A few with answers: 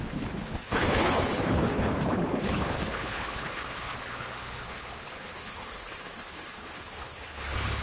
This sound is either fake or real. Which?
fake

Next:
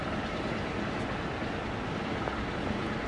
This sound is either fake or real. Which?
real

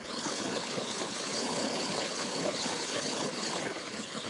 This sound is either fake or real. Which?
fake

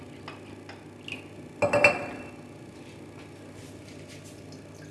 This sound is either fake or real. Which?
real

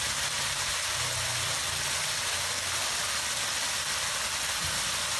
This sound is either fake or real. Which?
real